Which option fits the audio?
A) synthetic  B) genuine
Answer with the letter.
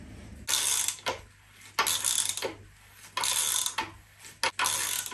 B